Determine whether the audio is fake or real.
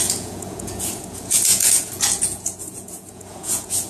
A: fake